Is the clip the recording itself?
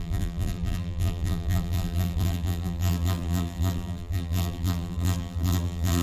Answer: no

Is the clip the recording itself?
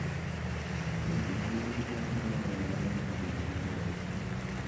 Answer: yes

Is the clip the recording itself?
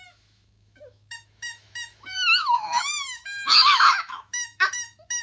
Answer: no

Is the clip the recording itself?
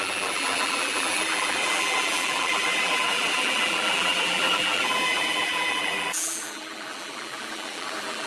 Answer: no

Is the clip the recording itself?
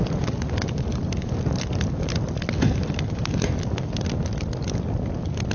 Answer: yes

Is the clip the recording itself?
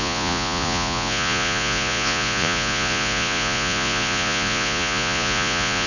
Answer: no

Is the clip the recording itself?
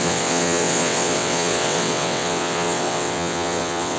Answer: no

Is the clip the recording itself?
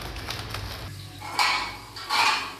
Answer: yes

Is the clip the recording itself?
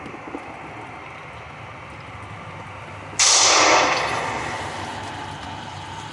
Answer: yes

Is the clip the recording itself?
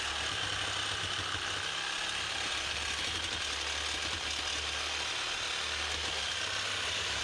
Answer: yes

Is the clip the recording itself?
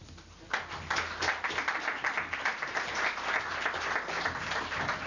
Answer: yes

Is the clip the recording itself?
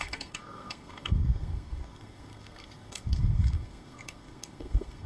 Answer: no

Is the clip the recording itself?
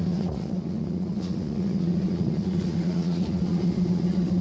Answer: no